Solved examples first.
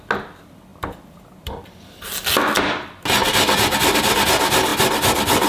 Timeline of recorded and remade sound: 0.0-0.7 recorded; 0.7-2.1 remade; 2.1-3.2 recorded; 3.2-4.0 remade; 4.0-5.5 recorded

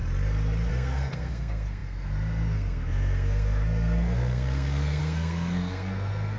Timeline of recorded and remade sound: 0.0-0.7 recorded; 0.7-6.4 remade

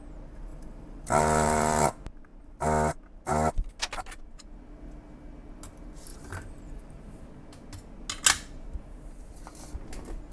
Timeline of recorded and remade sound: 0.0-0.5 recorded; 0.5-1.9 remade; 1.9-6.1 recorded; 6.1-7.2 remade; 7.2-10.3 recorded

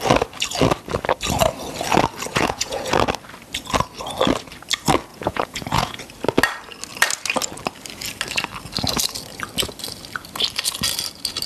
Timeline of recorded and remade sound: 0.0-2.3 recorded; 2.3-2.9 remade; 2.9-5.1 recorded; 5.1-6.0 remade; 6.0-11.5 recorded